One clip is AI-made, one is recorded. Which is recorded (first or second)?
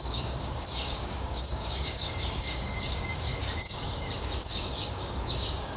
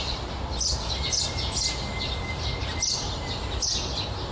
second